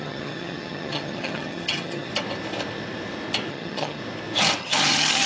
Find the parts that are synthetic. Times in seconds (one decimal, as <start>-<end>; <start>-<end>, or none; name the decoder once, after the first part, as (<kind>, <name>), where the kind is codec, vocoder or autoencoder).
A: 0.0-2.1 (vocoder, HiFi-GAN); 3.5-4.0; 4.6-5.3